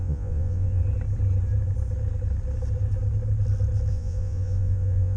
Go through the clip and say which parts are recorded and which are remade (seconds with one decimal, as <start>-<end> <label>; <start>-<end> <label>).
0.0-0.8 remade; 0.8-3.9 recorded; 3.9-5.2 remade